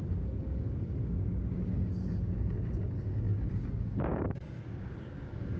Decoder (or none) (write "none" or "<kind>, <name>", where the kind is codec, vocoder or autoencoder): codec, DAC